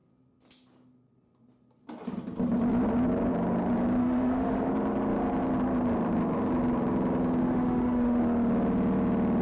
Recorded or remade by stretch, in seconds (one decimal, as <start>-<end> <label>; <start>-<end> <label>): 0.0-4.0 recorded; 4.0-4.7 remade; 4.7-7.4 recorded; 7.4-8.2 remade; 8.2-9.4 recorded